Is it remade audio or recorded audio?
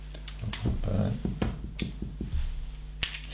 recorded